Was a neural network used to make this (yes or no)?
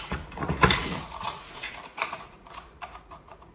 yes